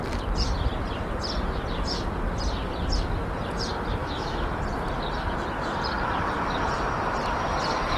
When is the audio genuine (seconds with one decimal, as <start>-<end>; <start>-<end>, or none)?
0.0-4.0; 4.6-8.0